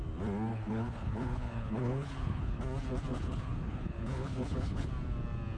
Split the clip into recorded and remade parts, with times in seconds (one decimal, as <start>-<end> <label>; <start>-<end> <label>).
0.0-0.5 recorded; 0.5-2.6 remade; 2.6-3.1 recorded; 3.1-4.9 remade; 4.9-5.6 recorded